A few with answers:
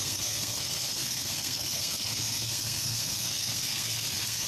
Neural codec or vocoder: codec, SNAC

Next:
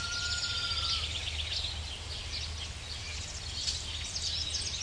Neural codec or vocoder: none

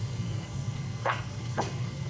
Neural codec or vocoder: codec, SNAC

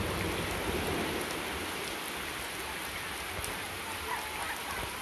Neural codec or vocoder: none